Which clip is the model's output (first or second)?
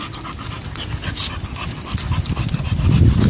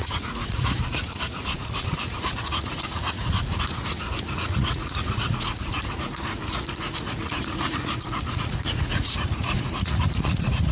second